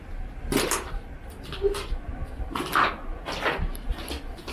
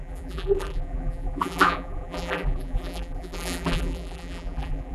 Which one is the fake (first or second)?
second